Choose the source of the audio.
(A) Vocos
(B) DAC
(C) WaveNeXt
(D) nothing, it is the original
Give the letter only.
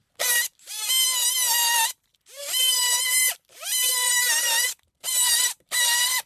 D